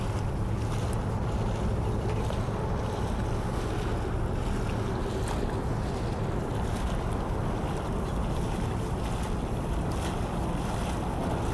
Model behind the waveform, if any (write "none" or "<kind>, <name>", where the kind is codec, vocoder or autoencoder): none